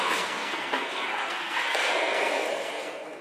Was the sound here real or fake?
fake